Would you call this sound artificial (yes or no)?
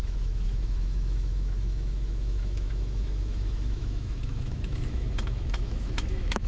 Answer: yes